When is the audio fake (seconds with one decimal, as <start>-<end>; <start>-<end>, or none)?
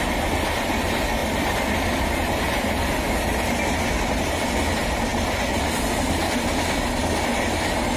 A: none